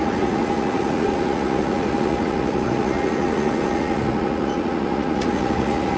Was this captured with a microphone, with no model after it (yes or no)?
no